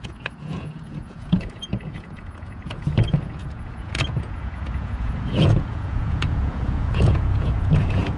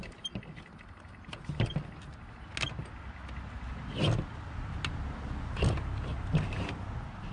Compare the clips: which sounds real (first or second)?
second